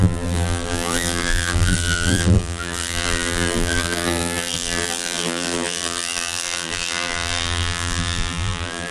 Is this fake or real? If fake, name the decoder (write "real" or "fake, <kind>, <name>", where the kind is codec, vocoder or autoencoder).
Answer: fake, vocoder, BigVGAN v2